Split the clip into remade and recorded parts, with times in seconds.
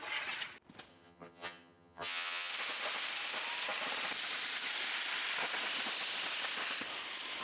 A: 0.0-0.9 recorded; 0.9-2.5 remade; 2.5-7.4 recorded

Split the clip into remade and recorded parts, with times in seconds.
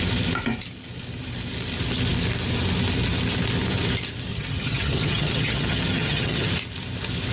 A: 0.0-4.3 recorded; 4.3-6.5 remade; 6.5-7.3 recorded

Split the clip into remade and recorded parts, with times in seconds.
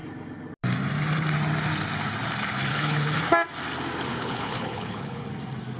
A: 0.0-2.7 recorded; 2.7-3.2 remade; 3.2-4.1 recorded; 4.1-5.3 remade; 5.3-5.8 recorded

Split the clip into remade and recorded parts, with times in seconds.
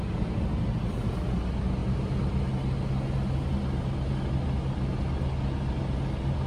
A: 0.0-6.5 recorded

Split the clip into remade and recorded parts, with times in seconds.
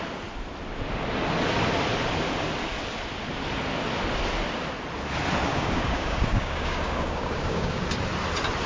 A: 0.0-5.5 recorded; 5.5-7.8 remade; 7.8-8.7 recorded